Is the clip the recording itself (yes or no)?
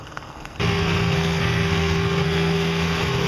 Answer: no